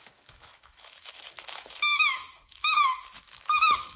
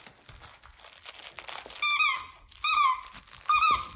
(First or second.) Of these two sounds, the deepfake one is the first